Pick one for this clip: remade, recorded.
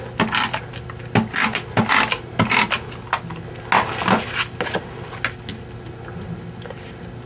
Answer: recorded